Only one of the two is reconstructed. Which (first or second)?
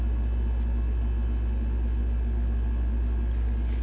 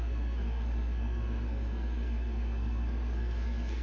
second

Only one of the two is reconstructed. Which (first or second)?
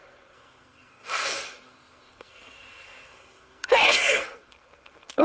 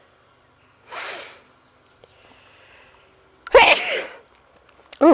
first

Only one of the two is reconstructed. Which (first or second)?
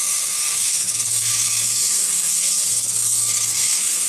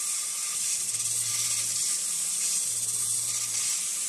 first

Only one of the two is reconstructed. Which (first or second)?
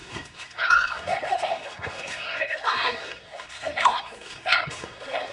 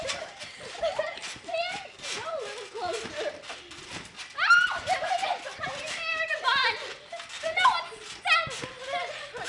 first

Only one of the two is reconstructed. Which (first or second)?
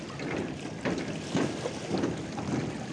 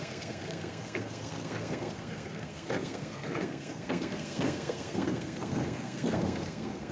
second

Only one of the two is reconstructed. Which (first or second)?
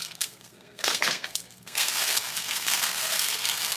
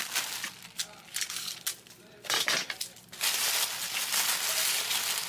first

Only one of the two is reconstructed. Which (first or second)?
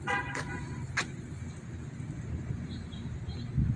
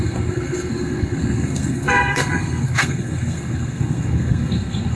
second